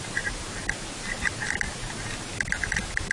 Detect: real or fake real